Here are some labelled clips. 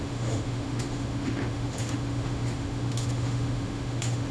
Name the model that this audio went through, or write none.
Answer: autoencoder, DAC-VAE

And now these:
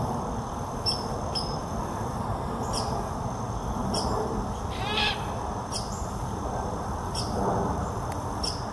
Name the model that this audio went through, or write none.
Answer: vocoder, BigVGAN v2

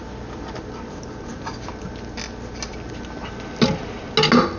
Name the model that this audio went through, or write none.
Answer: none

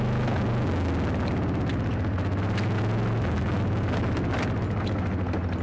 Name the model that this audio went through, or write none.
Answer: none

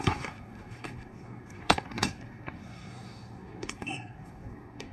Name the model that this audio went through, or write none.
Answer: codec, SNAC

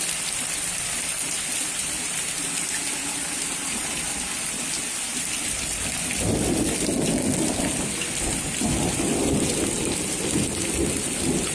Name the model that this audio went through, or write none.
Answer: none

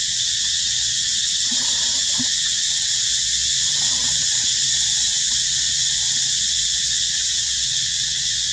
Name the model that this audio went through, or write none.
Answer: vocoder, WaveNeXt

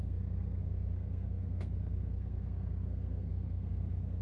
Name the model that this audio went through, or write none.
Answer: codec, SNAC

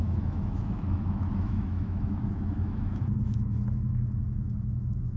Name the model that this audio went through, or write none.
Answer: autoencoder, DAC-VAE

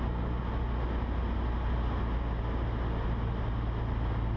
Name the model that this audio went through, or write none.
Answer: none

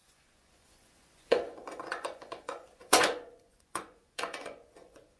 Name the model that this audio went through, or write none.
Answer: vocoder, Vocos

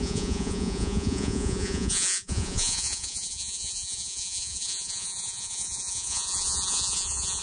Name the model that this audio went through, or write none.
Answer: vocoder, Vocos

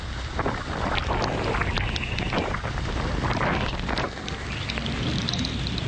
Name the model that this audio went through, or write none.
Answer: none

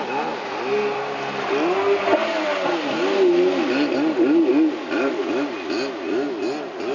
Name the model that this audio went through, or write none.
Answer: none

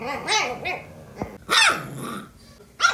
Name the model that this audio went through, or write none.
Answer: none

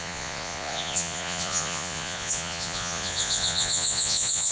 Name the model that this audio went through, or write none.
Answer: vocoder, Vocos